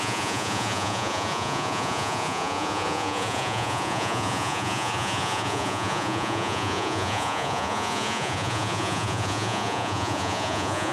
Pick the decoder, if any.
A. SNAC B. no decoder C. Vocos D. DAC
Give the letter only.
C